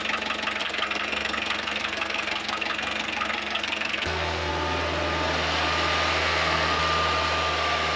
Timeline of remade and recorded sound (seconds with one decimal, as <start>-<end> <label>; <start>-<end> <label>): 0.0-0.6 recorded; 0.6-4.5 remade; 4.5-6.2 recorded; 6.2-6.8 remade; 6.8-8.0 recorded